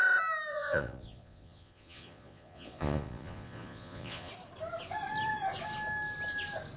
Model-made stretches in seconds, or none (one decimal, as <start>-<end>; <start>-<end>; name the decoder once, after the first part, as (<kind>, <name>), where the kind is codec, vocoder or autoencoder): 0.5-4.3 (vocoder, Vocos)